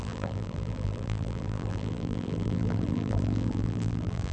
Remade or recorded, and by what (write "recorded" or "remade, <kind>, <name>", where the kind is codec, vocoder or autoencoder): remade, vocoder, BigVGAN v2